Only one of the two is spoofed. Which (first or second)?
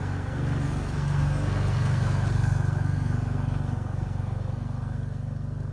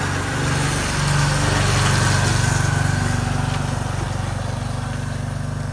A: first